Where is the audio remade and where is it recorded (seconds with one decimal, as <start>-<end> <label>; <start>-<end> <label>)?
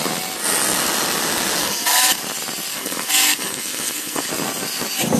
0.0-1.6 recorded; 1.6-2.2 remade; 2.2-2.7 recorded; 2.7-4.3 remade; 4.3-5.2 recorded